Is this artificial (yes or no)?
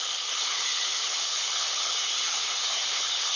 yes